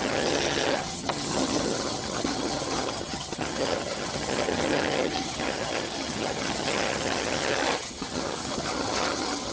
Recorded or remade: remade